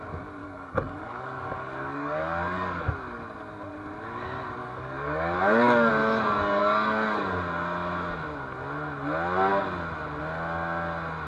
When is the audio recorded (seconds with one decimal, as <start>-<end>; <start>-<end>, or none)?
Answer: 0.0-0.4; 2.9-4.6; 5.9-6.6; 7.2-11.3